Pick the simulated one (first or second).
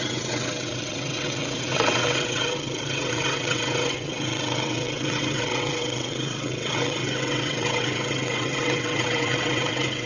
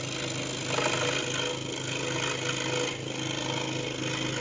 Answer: first